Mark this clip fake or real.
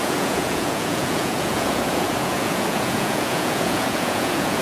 fake